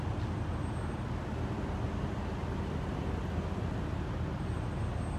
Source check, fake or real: real